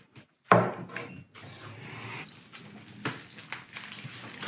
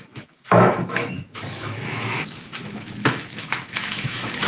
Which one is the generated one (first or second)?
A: second